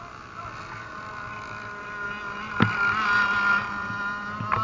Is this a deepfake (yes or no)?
no